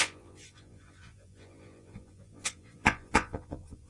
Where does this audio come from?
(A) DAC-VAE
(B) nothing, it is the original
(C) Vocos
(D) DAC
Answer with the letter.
C